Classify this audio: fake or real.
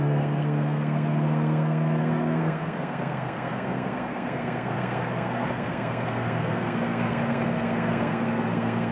fake